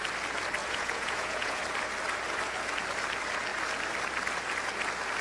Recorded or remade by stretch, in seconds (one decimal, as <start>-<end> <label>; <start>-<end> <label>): 0.0-0.6 recorded; 0.6-1.6 remade; 1.6-5.2 recorded